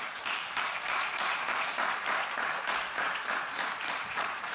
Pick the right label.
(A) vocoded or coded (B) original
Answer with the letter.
A